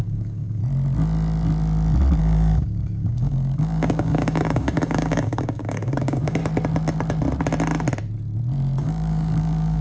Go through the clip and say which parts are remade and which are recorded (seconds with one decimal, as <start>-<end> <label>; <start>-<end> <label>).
0.0-0.6 remade; 0.6-2.2 recorded; 2.2-6.4 remade; 6.4-8.8 recorded; 8.8-9.8 remade